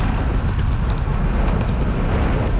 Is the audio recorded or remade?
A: recorded